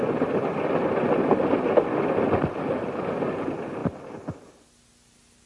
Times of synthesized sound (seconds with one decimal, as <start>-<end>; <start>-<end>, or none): none

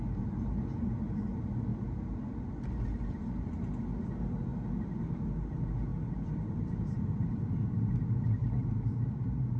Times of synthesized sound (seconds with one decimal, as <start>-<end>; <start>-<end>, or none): 5.9-7.4; 8.4-9.6

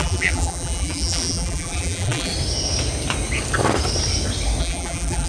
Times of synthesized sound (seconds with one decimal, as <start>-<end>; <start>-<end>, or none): 0.0-2.3; 4.6-5.3

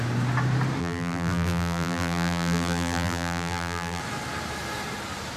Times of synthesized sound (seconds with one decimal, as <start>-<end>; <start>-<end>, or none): 0.8-4.0